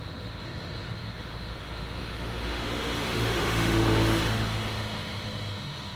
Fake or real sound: fake